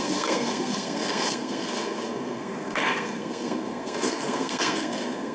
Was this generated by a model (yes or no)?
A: yes